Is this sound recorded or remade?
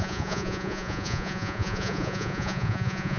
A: remade